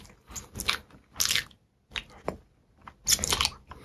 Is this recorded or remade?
recorded